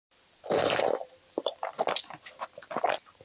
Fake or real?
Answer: fake